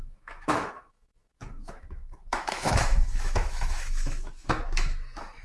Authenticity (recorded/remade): remade